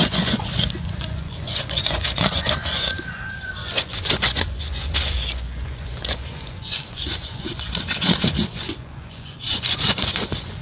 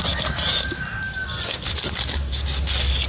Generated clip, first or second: first